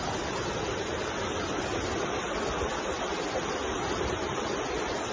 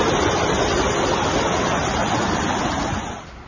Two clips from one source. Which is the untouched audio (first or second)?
first